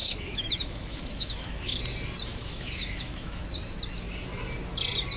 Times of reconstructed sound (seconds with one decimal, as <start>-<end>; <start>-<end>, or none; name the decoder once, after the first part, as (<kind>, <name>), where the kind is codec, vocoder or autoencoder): 0.0-1.8 (autoencoder, DAC-VAE); 2.3-3.5